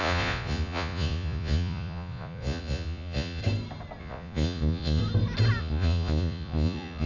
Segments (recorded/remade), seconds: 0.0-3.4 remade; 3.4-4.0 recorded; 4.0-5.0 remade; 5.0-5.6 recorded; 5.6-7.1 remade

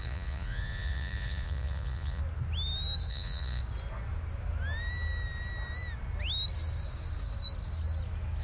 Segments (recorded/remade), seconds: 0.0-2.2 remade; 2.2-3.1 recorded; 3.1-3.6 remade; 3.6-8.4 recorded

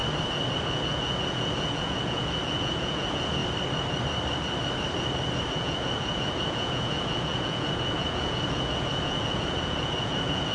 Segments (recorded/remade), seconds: 0.0-0.5 recorded; 0.5-3.4 remade; 3.4-5.5 recorded; 5.5-10.5 remade